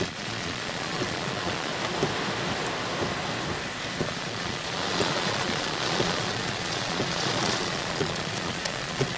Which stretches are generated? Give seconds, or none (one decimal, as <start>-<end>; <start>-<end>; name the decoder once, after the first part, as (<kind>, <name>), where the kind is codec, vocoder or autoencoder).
0.0-1.7 (vocoder, Vocos); 4.0-9.2